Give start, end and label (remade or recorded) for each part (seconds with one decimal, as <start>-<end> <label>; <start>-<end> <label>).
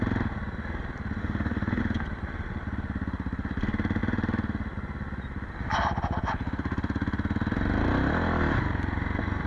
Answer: 0.0-1.2 recorded; 1.2-1.8 remade; 1.8-9.5 recorded